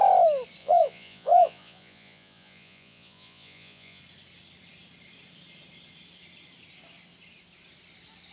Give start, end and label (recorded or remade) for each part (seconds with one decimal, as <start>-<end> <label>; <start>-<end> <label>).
0.0-0.6 recorded; 0.6-4.0 remade; 4.0-8.3 recorded